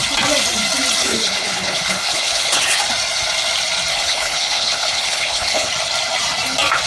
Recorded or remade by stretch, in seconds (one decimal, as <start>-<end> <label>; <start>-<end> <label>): 0.0-1.0 recorded; 1.0-2.8 remade; 2.8-3.9 recorded; 3.9-5.7 remade; 5.7-6.9 recorded